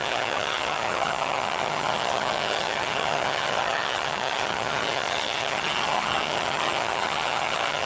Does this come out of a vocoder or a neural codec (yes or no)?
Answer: yes